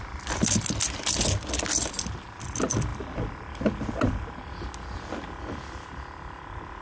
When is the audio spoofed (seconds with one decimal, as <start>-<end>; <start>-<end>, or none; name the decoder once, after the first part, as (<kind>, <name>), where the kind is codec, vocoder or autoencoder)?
none